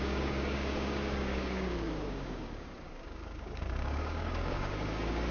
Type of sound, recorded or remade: remade